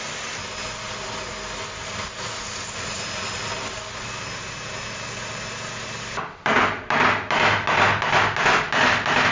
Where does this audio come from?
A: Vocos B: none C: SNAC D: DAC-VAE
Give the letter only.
B